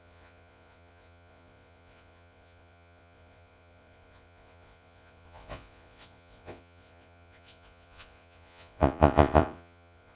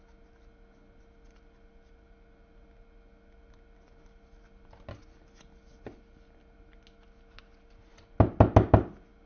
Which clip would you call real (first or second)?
second